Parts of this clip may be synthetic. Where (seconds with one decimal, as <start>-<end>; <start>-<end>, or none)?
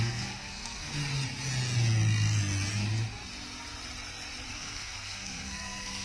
0.0-0.9; 4.5-6.0